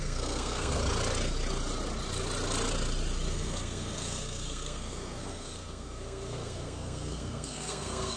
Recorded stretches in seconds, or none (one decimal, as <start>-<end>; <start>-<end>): 0.8-3.3